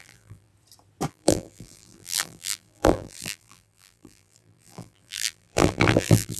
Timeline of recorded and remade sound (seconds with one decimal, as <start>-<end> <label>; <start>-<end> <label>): 0.0-0.5 remade; 0.5-1.1 recorded; 1.1-6.4 remade